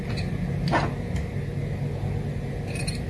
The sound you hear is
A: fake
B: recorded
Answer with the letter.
B